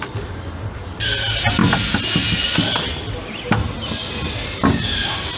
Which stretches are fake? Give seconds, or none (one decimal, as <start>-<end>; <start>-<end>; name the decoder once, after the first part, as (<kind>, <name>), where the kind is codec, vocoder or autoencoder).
none